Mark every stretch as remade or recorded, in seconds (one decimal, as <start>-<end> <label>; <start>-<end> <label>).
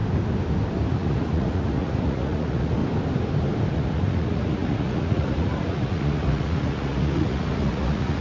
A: 0.0-0.9 recorded; 0.9-2.8 remade; 2.8-3.7 recorded; 3.7-8.2 remade